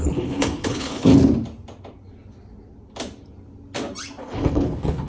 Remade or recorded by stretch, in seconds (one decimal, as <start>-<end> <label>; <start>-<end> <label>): 0.0-1.1 remade; 1.1-4.2 recorded; 4.2-5.1 remade